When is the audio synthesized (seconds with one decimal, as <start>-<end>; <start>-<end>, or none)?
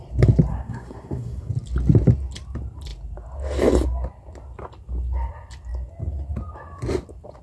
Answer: 0.5-1.5